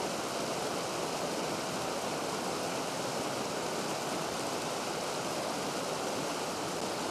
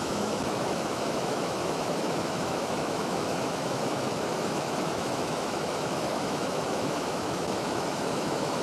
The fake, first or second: second